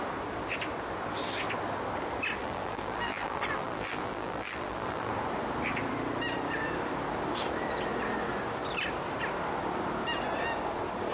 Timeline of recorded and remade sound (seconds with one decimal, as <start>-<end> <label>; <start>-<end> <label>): 0.0-2.4 recorded; 2.4-5.1 remade; 5.1-11.1 recorded